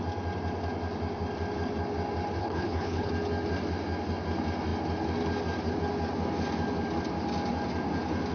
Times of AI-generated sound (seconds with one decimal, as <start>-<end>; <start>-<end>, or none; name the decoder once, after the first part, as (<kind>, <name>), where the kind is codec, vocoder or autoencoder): 2.4-3.1 (codec, HILCodec)